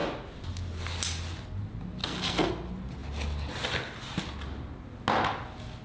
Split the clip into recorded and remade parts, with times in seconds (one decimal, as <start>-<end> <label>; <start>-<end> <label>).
0.0-2.0 recorded; 2.0-2.5 remade; 2.5-5.8 recorded